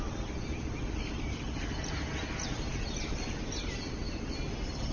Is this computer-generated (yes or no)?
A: no